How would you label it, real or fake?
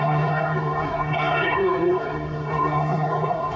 fake